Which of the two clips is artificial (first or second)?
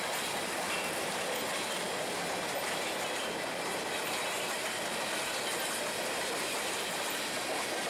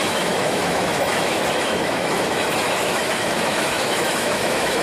second